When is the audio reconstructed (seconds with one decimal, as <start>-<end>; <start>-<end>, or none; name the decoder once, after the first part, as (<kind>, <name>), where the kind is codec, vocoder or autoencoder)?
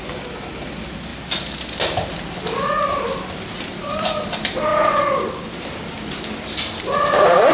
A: 0.0-1.1 (vocoder, BigVGAN v2); 2.4-4.7; 7.1-7.5